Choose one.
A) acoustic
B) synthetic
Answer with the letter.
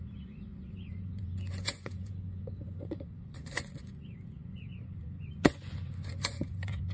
B